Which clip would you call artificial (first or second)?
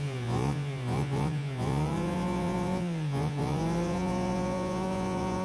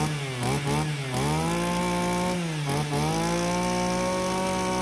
first